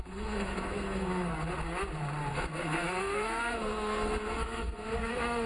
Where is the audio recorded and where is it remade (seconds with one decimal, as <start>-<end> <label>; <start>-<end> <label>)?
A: 0.0-1.3 remade; 1.3-2.3 recorded; 2.3-5.5 remade